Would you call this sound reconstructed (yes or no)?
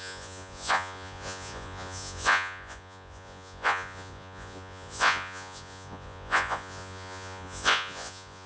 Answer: yes